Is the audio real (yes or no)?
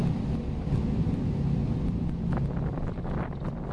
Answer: yes